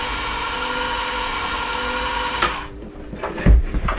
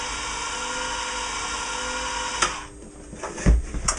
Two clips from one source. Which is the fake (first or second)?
first